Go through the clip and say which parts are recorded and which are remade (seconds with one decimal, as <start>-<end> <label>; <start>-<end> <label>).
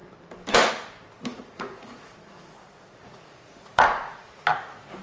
0.0-1.3 recorded; 1.3-4.3 remade; 4.3-5.0 recorded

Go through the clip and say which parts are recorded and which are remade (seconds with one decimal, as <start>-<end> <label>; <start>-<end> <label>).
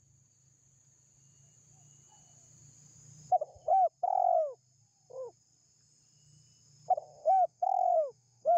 0.0-7.2 recorded; 7.2-8.6 remade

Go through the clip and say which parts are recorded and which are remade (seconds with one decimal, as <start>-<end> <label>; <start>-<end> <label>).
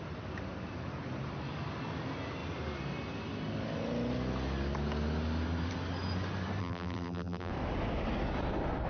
0.0-6.6 recorded; 6.6-7.5 remade; 7.5-8.9 recorded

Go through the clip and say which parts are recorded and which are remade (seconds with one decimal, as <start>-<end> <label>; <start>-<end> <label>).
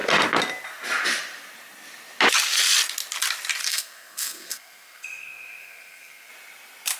0.0-3.6 recorded; 3.6-6.3 remade; 6.3-7.0 recorded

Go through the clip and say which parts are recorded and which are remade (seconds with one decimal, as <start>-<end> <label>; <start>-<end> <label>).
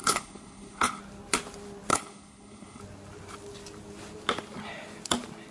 0.0-1.0 remade; 1.0-1.9 recorded; 1.9-2.8 remade; 2.8-5.5 recorded